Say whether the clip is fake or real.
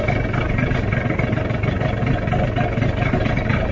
real